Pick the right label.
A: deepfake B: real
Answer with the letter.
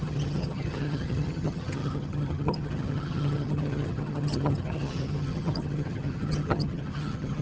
A